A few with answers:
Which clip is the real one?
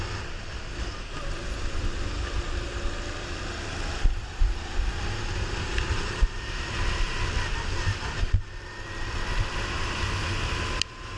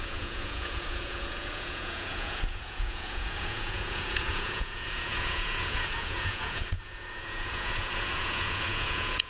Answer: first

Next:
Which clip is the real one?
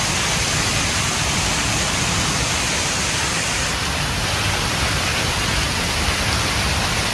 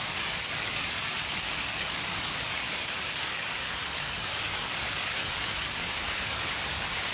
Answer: first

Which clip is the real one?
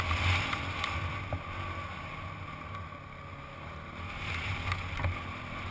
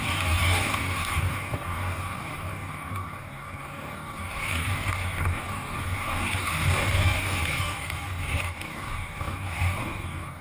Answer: first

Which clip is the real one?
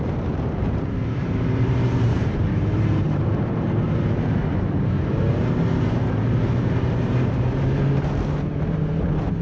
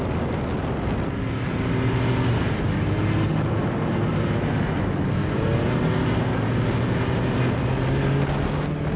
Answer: second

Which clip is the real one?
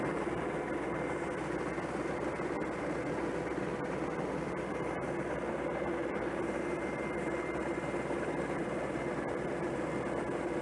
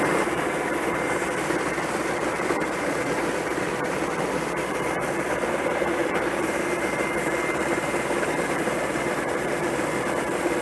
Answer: first